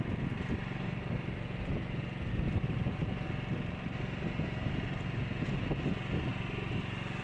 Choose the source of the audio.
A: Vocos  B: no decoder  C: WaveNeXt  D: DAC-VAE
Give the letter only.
B